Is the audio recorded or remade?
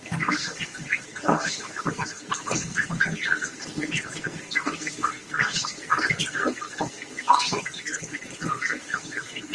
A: remade